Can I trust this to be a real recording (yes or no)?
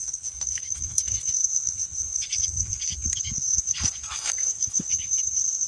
no